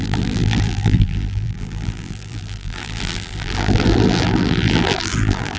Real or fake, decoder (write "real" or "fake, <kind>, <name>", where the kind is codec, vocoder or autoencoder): fake, vocoder, BigVGAN v2